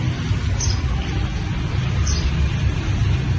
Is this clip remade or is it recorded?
recorded